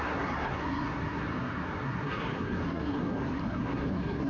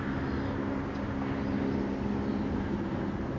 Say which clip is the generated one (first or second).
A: first